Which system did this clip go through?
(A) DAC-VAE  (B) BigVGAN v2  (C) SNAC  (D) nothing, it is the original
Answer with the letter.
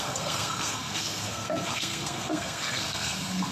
C